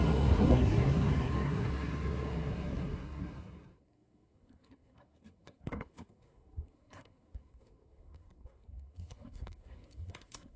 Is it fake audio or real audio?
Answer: fake